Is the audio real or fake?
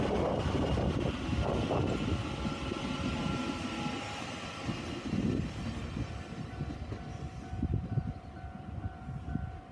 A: real